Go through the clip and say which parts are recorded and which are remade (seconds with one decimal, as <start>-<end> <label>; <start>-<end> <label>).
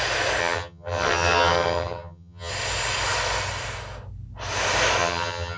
0.0-0.4 recorded; 0.4-2.5 remade; 2.5-5.0 recorded; 5.0-5.6 remade